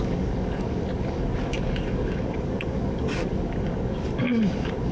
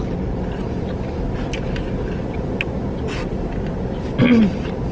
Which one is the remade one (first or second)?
first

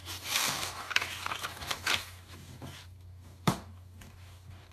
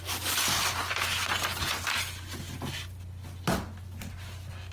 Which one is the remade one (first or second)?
first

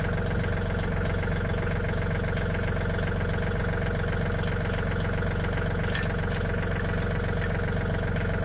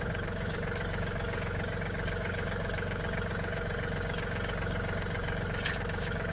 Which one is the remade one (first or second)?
second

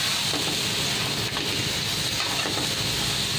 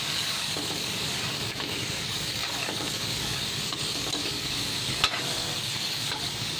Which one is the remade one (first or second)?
second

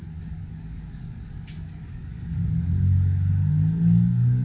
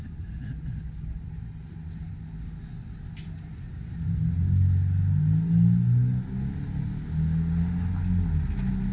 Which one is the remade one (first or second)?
first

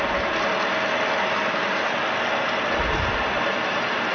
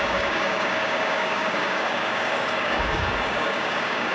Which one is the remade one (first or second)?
second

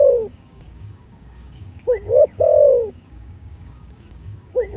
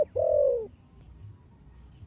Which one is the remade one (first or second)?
first